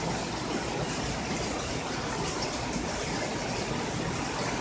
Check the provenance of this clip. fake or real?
real